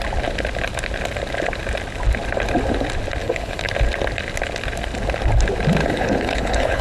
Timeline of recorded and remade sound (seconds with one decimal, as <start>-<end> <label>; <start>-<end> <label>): 0.0-3.2 recorded; 3.2-3.7 remade; 3.7-5.8 recorded; 5.8-6.8 remade